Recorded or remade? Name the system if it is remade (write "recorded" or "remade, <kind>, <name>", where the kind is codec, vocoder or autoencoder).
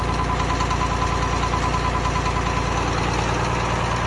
recorded